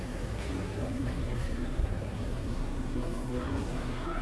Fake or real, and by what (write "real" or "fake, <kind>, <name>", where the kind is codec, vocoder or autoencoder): fake, codec, SNAC